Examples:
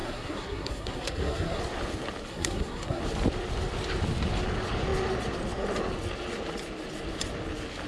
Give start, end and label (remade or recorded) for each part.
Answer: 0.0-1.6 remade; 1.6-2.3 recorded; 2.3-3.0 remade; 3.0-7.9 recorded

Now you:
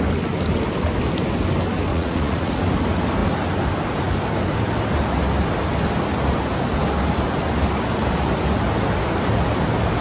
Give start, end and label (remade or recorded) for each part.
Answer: 0.0-1.9 recorded; 1.9-2.5 remade; 2.5-10.0 recorded

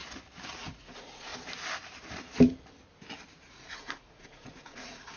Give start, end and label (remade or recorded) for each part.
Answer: 0.0-0.6 recorded; 0.6-1.3 remade; 1.3-3.5 recorded; 3.5-5.2 remade

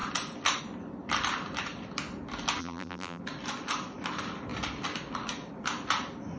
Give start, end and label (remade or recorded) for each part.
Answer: 0.0-2.6 recorded; 2.6-3.2 remade; 3.2-6.4 recorded

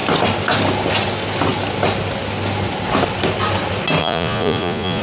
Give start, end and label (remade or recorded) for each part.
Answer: 0.0-4.0 recorded; 4.0-5.0 remade

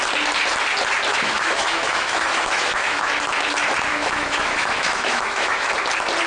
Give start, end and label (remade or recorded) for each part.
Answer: 0.0-1.1 recorded; 1.1-3.1 remade; 3.1-3.9 recorded; 3.9-5.7 remade; 5.7-6.3 recorded

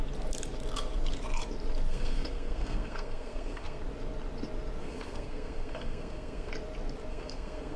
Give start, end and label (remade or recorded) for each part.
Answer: 0.0-1.9 recorded; 1.9-3.8 remade; 3.8-4.8 recorded; 4.8-6.5 remade; 6.5-7.1 recorded; 7.1-7.8 remade